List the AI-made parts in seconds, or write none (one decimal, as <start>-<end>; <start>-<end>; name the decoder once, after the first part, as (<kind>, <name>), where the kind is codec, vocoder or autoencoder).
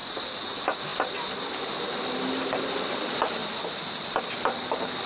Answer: none